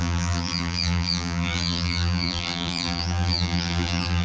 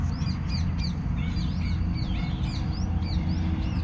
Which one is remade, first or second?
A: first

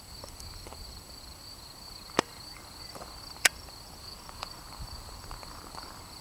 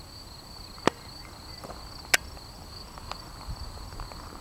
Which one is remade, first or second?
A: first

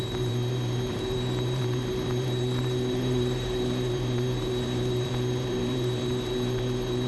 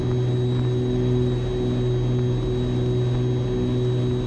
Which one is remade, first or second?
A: first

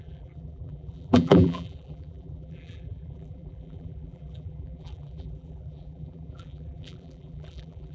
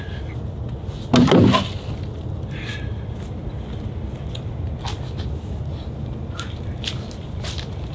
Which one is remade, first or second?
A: first